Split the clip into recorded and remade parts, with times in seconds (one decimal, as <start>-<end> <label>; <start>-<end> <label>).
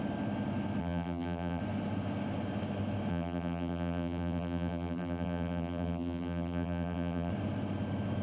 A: 0.0-0.8 recorded; 0.8-1.6 remade; 1.6-3.1 recorded; 3.1-7.3 remade; 7.3-8.2 recorded